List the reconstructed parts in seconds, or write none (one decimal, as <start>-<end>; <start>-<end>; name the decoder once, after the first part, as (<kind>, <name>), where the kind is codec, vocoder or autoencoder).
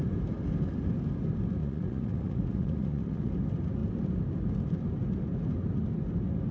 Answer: 1.6-3.3 (vocoder, Vocos)